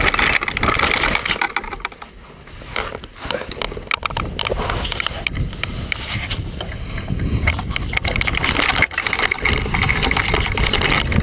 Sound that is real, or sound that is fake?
real